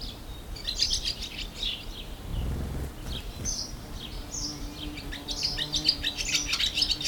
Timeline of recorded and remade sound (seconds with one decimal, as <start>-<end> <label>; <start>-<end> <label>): 0.0-7.1 recorded